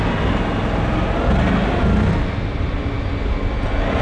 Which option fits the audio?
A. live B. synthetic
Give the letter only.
A